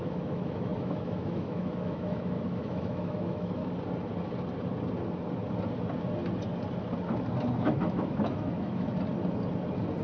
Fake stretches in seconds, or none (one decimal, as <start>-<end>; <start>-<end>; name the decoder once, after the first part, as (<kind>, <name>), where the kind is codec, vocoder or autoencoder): 0.0-3.6 (autoencoder, DAC-VAE); 7.6-8.9